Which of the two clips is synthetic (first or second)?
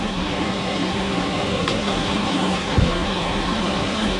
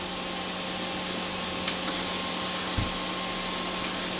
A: first